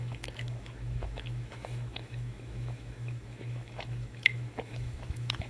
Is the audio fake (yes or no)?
yes